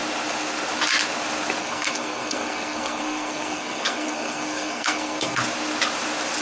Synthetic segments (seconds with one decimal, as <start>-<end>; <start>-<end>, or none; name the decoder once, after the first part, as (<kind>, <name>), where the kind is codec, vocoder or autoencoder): 1.6-5.4 (codec, SNAC)